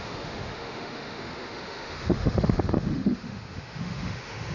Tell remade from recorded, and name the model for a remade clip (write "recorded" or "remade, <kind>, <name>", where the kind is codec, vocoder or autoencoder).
remade, autoencoder, DAC-VAE